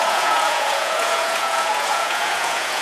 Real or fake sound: fake